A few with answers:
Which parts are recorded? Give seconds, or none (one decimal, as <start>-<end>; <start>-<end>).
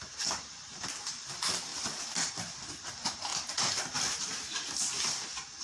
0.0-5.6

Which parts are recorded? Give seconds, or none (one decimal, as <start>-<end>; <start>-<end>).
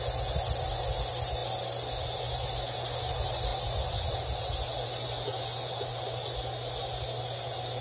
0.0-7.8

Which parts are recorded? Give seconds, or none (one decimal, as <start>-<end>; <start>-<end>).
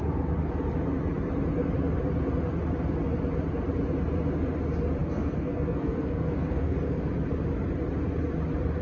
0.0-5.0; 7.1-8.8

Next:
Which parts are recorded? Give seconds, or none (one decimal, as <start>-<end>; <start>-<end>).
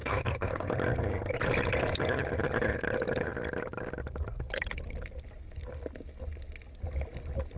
0.7-7.6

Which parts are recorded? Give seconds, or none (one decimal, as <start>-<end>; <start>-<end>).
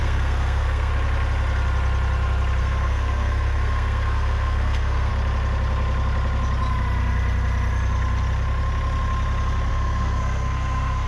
0.9-2.6; 5.1-9.7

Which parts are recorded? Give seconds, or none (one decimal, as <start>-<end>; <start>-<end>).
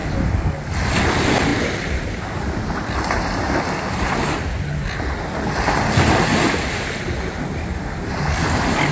0.0-8.9